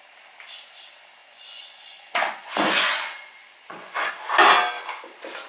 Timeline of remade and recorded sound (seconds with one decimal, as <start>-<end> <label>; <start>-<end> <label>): 0.0-1.2 recorded; 1.2-4.1 remade; 4.1-5.5 recorded